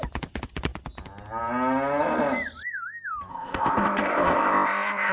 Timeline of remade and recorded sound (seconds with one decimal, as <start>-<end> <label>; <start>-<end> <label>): 0.0-3.3 recorded; 3.3-5.1 remade